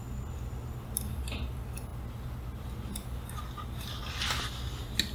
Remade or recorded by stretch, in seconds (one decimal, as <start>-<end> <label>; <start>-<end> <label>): 0.0-5.1 recorded